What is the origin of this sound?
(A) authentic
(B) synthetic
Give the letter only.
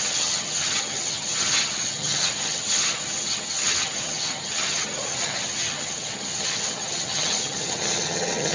B